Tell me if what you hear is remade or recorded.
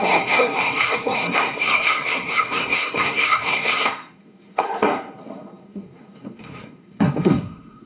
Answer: remade